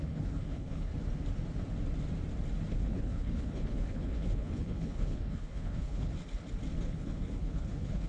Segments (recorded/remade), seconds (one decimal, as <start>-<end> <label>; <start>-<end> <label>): 0.0-0.9 remade; 0.9-2.7 recorded; 2.7-6.1 remade; 6.1-6.7 recorded; 6.7-8.1 remade